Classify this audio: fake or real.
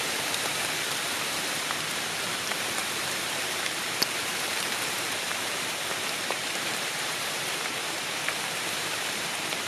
fake